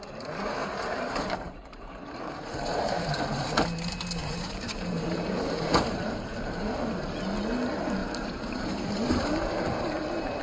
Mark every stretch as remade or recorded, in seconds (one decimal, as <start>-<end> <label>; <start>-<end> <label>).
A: 0.0-0.6 recorded; 0.6-3.5 remade; 3.5-4.2 recorded; 4.2-7.2 remade; 7.2-8.0 recorded; 8.0-10.4 remade